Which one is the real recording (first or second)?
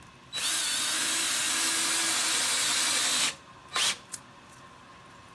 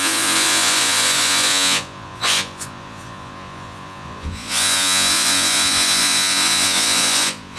first